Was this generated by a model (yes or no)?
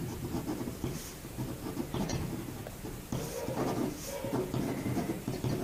no